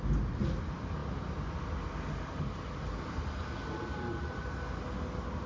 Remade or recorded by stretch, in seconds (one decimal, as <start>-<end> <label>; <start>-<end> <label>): 0.0-5.5 recorded